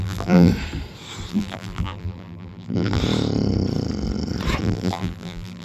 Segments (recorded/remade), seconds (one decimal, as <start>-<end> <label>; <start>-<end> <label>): 0.0-0.5 remade; 0.5-1.3 recorded; 1.3-3.0 remade; 3.0-4.6 recorded; 4.6-5.6 remade